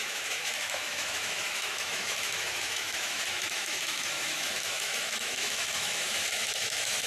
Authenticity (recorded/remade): remade